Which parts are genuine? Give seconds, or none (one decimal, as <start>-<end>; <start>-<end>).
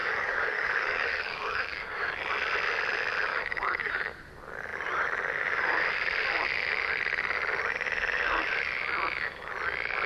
2.2-3.3; 3.9-10.1